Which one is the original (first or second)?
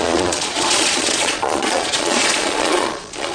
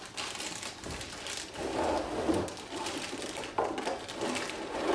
second